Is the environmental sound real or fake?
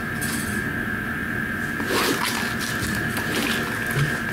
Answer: real